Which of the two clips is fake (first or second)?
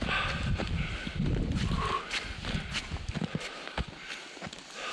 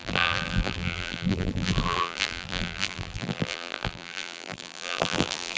second